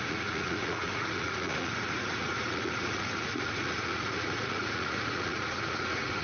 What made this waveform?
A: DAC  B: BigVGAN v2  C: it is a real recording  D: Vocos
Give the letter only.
D